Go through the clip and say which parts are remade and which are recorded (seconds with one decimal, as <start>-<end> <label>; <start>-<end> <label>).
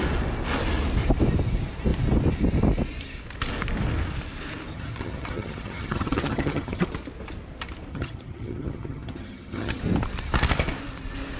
0.0-4.7 recorded; 4.7-6.8 remade; 6.8-7.9 recorded; 7.9-9.8 remade; 9.8-11.4 recorded